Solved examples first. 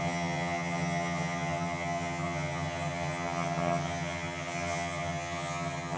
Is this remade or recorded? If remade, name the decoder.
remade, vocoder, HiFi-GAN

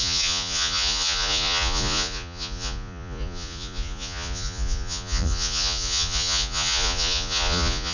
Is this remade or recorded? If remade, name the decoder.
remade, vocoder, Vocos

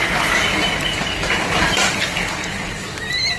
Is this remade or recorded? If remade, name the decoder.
recorded